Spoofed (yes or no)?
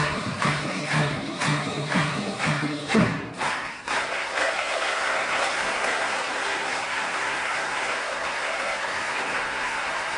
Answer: yes